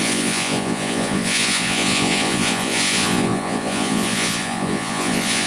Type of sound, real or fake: fake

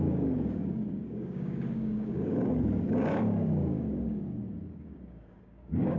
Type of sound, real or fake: fake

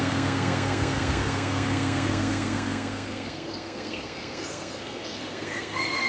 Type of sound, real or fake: fake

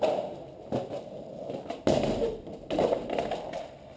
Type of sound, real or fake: real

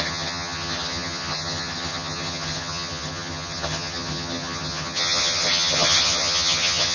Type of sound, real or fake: fake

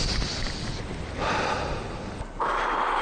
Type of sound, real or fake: real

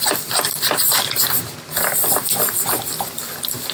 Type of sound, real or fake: real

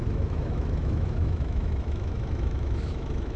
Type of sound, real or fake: fake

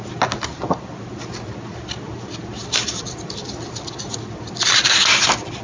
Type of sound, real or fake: real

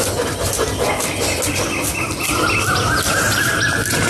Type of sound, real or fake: real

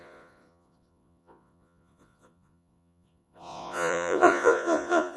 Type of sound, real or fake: fake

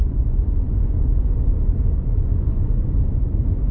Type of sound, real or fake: fake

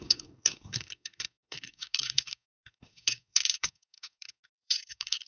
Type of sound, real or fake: fake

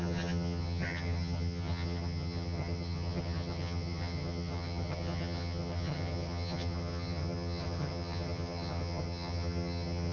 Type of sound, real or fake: fake